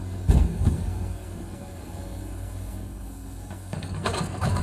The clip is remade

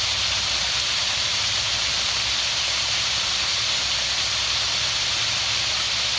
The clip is recorded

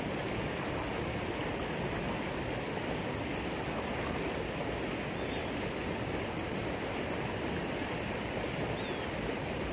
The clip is recorded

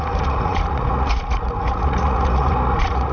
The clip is remade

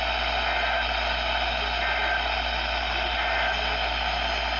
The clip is recorded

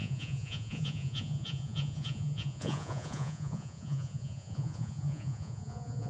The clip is remade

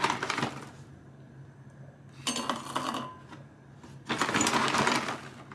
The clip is recorded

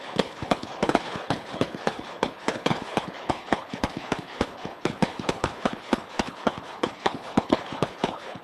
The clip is remade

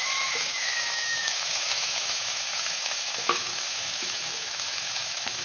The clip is remade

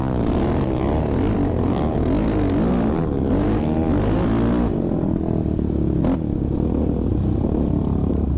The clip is recorded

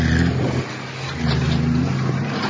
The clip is recorded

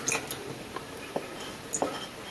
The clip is recorded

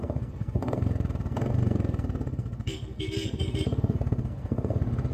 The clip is remade